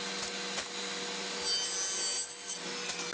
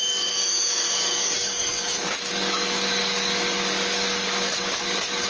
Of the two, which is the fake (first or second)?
second